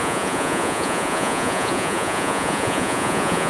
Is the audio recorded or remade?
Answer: remade